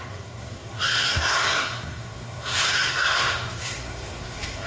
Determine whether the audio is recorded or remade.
remade